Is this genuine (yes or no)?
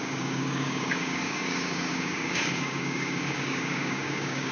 no